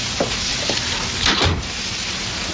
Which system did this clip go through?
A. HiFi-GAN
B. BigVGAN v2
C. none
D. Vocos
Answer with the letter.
C